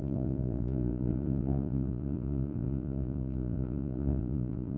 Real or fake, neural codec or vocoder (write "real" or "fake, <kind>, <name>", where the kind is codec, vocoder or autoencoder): fake, vocoder, Vocos